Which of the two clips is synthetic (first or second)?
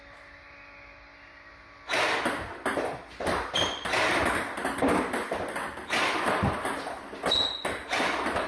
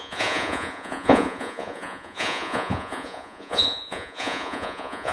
second